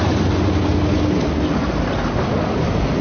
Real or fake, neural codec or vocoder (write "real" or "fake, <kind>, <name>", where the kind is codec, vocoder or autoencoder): real